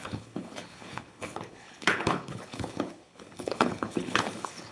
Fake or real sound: fake